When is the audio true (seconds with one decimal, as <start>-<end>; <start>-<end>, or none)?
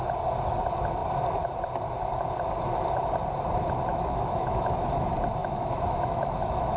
0.0-3.9; 4.8-5.4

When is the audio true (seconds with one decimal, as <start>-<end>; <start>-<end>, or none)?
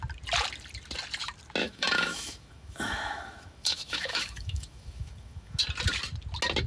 0.0-1.6; 5.6-6.7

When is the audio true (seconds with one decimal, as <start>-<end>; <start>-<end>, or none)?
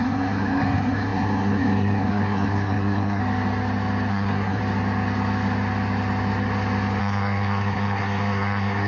3.2-4.1; 4.6-7.0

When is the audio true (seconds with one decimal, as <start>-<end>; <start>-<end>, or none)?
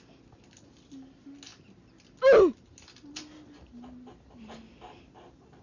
0.0-5.6